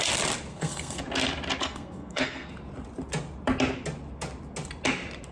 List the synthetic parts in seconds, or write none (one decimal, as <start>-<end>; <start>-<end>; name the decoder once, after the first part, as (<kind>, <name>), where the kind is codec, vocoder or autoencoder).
0.5-1.0 (codec, SNAC); 1.6-2.5